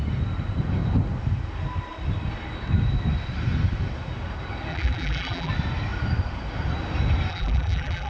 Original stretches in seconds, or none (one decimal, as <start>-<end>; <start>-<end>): 0.0-4.7; 5.5-7.3